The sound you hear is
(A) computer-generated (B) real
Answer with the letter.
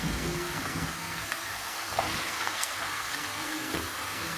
A